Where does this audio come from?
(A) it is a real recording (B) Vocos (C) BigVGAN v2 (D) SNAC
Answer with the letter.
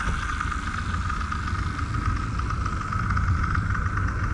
A